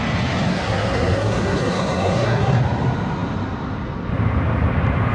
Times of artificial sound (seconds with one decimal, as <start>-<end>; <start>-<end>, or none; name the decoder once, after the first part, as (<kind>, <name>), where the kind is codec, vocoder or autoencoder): 0.5-2.6 (codec, SNAC)

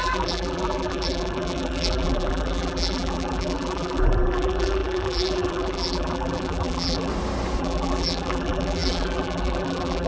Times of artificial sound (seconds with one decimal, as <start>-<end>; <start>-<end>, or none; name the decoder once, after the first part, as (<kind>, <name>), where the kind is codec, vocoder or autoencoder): 0.0-7.1 (vocoder, BigVGAN v2); 7.6-10.1

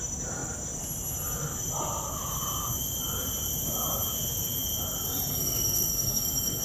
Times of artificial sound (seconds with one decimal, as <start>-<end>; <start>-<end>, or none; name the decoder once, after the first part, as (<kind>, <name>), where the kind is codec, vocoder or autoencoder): 5.3-6.6 (codec, SNAC)